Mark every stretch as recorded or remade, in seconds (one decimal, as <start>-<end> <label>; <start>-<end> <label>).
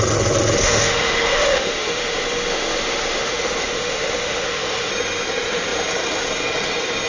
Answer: 0.0-0.6 recorded; 0.6-4.9 remade; 4.9-7.1 recorded